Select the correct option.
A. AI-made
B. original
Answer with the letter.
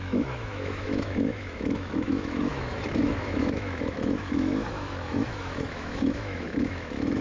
A